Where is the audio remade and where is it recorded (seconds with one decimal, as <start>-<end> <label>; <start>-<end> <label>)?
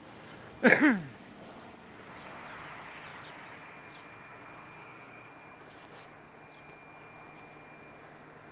0.0-4.8 recorded; 4.8-5.3 remade; 5.3-8.5 recorded